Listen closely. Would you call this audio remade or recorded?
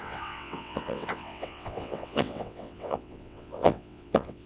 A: remade